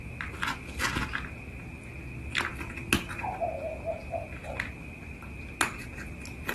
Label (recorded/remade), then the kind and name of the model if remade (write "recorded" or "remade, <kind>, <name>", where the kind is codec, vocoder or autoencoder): recorded